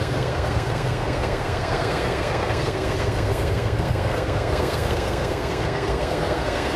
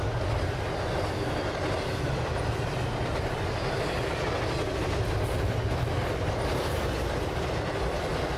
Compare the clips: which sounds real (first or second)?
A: second